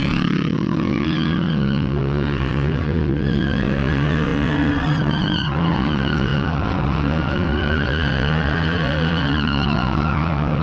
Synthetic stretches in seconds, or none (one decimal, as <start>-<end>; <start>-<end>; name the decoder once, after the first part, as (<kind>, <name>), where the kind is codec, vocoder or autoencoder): 0.0-10.6 (vocoder, WaveNeXt)

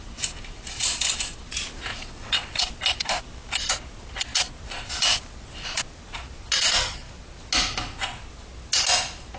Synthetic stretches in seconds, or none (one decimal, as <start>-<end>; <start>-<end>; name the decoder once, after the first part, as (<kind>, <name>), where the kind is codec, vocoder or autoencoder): 1.9-2.6 (vocoder, WaveNeXt)

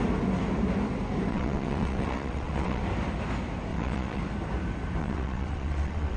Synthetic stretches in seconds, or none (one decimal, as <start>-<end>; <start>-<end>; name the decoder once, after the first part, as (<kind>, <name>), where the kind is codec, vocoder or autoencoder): 1.3-2.8 (vocoder, WaveNeXt); 3.7-4.2; 5.0-6.2